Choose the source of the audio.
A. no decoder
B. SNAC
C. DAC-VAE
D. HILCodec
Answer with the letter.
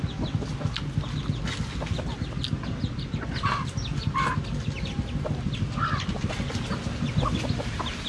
A